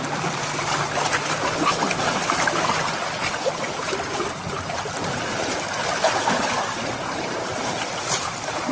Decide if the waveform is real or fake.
real